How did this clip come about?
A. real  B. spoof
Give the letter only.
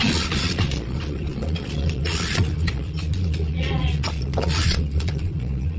B